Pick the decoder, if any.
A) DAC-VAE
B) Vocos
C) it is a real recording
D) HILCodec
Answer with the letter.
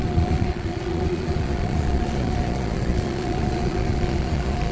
B